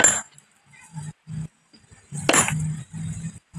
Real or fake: real